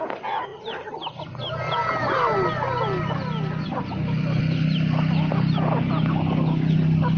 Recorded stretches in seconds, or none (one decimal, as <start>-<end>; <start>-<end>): 0.0-7.2

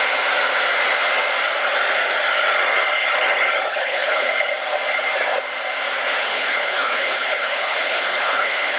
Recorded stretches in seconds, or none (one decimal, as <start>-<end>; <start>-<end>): 0.0-3.8; 4.3-6.2

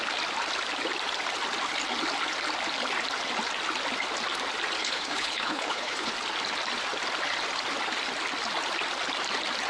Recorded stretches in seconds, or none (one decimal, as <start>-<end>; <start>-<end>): 0.0-4.8; 6.1-9.7

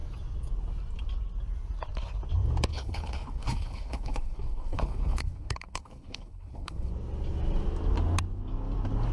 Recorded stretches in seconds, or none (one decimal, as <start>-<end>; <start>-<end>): 0.0-2.7; 6.9-9.1

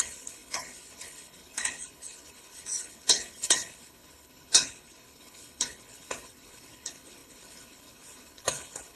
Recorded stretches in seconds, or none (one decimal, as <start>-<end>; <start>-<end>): none

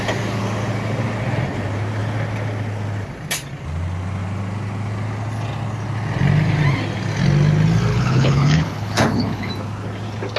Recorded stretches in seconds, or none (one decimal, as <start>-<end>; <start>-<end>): 0.0-7.9; 9.5-10.4

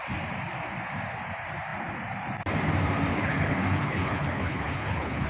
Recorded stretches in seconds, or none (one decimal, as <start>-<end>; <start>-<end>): 0.0-3.1

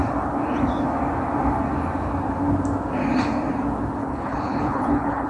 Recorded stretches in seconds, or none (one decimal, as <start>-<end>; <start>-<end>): 0.0-4.0